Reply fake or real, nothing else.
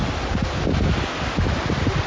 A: real